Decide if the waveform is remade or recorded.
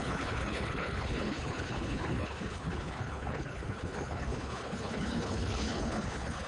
remade